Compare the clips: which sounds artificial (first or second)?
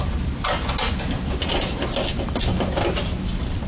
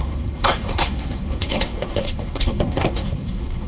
second